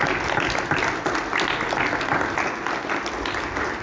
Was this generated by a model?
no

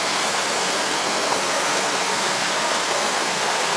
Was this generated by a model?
yes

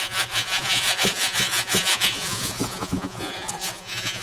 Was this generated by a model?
yes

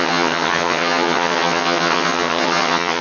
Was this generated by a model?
yes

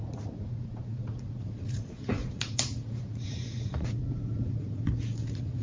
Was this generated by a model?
yes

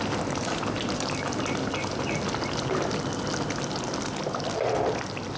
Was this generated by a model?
no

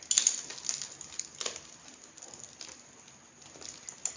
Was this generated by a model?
no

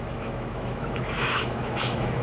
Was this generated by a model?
yes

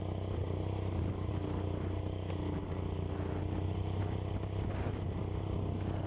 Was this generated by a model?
no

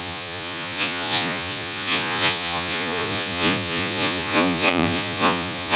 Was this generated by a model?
yes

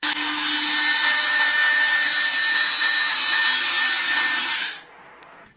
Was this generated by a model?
no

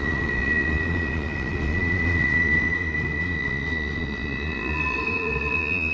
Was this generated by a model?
yes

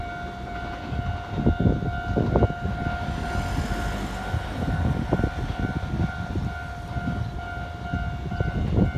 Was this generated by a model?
no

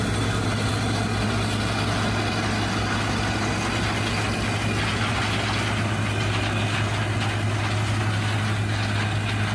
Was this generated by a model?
no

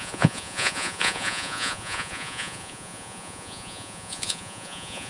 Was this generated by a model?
yes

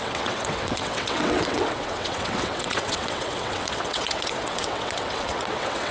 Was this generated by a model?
yes